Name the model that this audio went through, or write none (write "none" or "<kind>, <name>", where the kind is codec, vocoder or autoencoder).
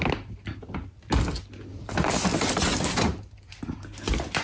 none